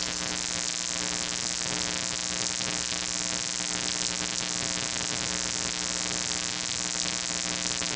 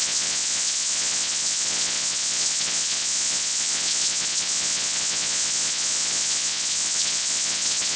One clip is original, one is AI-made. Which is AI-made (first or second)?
second